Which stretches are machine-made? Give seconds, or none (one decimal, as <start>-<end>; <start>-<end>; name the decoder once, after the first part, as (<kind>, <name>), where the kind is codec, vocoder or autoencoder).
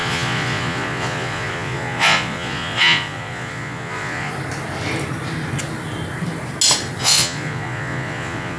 0.0-4.3 (vocoder, Vocos); 7.0-8.6